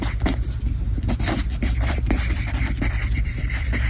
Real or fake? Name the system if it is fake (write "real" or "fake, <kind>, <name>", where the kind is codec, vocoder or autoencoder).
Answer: fake, vocoder, BigVGAN v2